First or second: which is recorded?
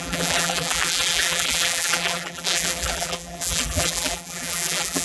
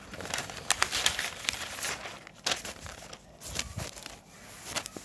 second